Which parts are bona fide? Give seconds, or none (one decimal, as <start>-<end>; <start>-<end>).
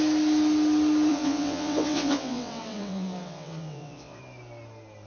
0.0-1.1; 4.2-5.1